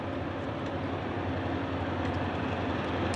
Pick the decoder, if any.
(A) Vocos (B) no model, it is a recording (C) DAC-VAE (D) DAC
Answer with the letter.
B